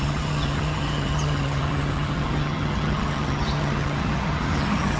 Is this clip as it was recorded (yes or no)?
no